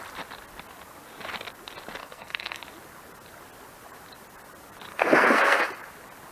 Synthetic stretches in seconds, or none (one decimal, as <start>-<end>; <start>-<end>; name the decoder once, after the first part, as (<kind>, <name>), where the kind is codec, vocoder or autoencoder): 2.0-2.6 (codec, SNAC); 4.9-5.7